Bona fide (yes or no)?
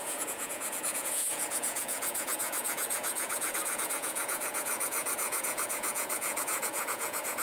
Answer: no